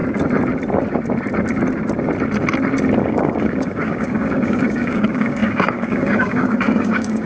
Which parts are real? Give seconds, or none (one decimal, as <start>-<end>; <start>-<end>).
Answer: 0.0-3.0